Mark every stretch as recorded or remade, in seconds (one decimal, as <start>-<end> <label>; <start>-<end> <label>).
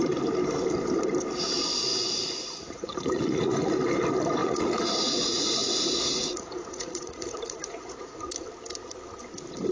0.0-1.9 recorded; 1.9-3.7 remade; 3.7-4.4 recorded; 4.4-8.2 remade; 8.2-9.7 recorded